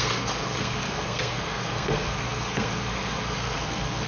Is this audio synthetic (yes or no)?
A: yes